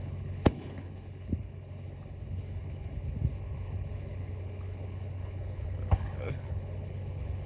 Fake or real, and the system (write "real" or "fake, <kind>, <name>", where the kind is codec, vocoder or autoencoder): fake, codec, HILCodec